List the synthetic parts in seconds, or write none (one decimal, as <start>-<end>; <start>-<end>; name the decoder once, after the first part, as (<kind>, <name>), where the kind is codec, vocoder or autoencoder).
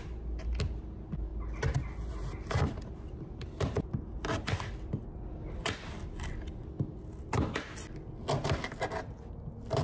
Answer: none